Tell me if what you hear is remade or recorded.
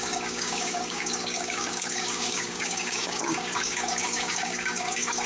remade